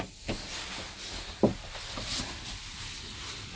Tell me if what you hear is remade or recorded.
recorded